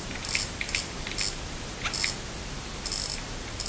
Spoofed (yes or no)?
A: no